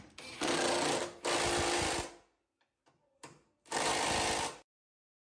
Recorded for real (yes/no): yes